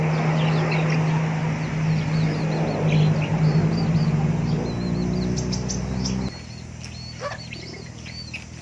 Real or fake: real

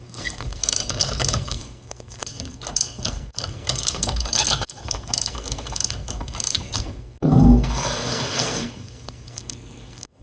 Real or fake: fake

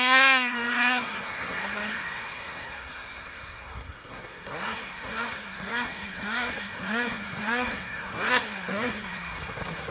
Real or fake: fake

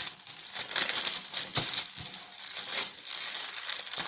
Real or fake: real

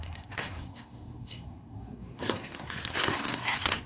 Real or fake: fake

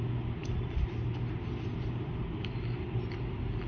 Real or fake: real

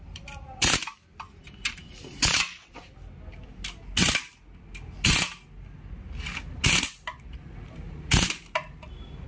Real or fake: real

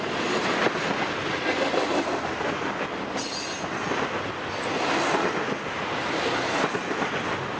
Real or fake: real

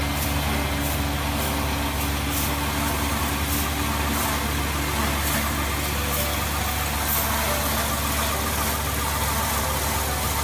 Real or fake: real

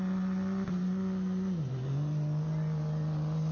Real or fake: real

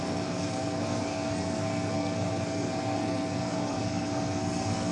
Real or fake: fake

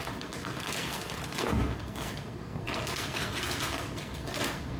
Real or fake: fake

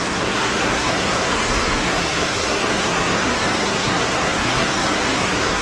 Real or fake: fake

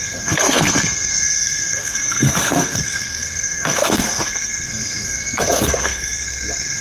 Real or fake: fake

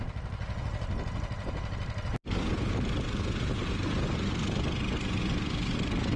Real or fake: real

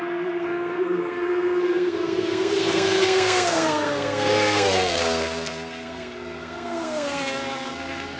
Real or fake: fake